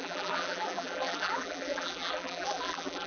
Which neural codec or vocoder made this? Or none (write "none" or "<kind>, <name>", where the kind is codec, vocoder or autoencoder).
vocoder, BigVGAN v2